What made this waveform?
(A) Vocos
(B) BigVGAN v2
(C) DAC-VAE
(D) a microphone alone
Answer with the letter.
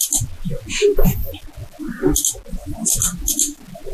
D